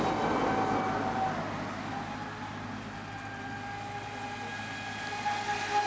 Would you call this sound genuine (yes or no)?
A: yes